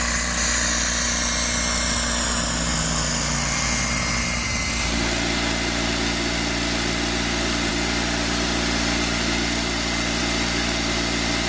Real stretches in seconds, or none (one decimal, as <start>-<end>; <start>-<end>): 0.0-11.5